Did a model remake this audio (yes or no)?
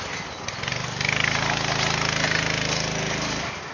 no